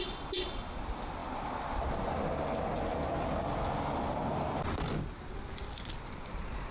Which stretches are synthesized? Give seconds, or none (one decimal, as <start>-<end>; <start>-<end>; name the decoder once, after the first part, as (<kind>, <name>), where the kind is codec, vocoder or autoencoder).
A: none